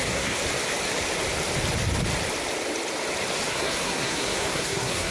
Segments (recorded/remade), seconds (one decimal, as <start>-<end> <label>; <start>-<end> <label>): 0.0-0.4 remade; 0.4-3.5 recorded; 3.5-5.1 remade